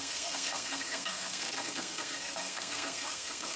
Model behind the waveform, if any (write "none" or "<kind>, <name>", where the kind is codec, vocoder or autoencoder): codec, SNAC